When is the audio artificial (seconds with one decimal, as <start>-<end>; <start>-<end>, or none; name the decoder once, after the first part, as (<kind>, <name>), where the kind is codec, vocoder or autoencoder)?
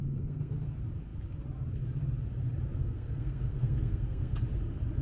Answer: 0.0-0.7 (codec, SNAC); 2.8-4.4